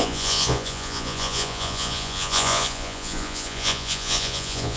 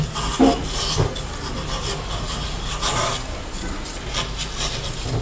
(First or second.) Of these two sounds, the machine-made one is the first